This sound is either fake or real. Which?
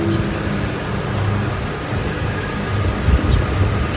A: real